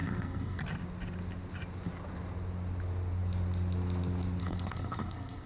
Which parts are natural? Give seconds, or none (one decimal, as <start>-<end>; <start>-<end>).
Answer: 0.6-4.4